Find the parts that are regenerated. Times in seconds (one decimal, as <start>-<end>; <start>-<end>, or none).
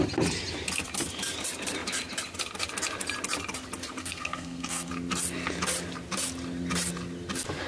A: 4.0-4.9